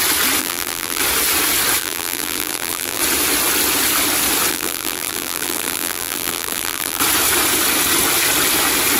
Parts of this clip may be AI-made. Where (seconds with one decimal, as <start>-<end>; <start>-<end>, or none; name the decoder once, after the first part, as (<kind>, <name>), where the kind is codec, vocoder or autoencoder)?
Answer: 0.4-1.0 (vocoder, BigVGAN v2); 1.8-3.0; 4.5-7.0

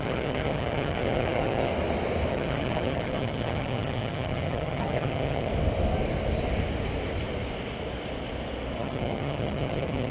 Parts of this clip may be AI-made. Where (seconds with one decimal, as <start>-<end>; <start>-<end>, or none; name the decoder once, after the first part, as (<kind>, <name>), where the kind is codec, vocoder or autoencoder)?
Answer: 0.0-1.7 (vocoder, HiFi-GAN); 2.3-5.5; 8.8-10.1

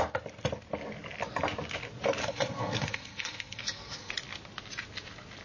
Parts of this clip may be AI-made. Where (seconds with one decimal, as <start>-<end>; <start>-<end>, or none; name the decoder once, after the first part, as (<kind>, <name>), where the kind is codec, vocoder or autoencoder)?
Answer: 2.2-4.1 (codec, SNAC)

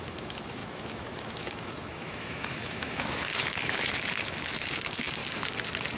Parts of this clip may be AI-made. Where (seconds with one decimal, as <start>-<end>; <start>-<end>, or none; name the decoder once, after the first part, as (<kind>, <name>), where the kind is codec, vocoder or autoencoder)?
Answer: 0.0-5.2 (autoencoder, DAC-VAE)

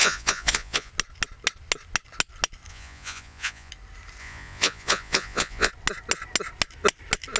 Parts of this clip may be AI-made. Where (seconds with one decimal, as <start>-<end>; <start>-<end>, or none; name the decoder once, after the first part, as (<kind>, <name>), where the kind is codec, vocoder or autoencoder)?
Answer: 0.0-0.9 (vocoder, Vocos); 2.7-3.7; 4.2-5.7

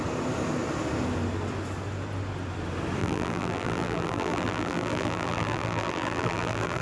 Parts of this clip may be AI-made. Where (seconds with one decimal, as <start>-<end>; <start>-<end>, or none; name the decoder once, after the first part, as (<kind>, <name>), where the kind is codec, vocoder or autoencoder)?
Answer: 3.0-6.8 (vocoder, BigVGAN v2)

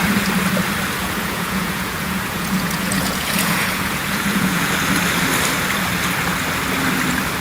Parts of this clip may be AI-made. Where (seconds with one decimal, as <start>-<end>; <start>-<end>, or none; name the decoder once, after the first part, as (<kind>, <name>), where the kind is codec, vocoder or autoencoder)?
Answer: 1.0-4.7 (vocoder, Vocos)

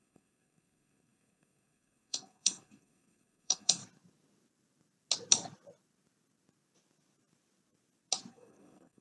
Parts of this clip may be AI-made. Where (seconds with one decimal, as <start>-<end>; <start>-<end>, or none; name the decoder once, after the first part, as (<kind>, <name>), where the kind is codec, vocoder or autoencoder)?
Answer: 0.0-3.8 (codec, SNAC); 8.3-9.0